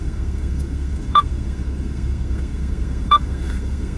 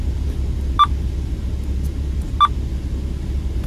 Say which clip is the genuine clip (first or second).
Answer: second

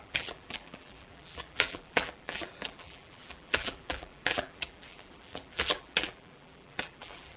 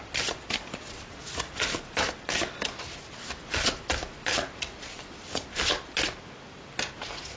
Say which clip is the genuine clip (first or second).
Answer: second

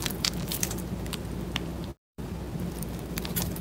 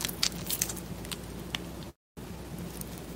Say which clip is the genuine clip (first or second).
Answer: second